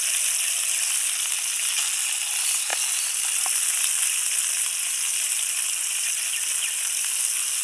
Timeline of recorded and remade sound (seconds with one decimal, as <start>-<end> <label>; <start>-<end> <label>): 0.0-7.6 recorded